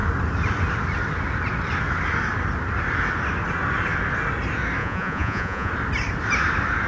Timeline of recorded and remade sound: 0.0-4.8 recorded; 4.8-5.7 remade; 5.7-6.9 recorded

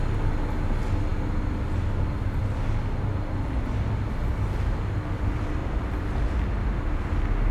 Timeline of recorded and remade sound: 0.0-7.5 recorded